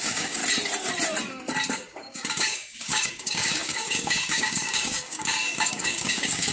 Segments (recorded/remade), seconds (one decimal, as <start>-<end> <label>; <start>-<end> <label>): 0.0-0.4 remade; 0.4-1.7 recorded; 1.7-6.5 remade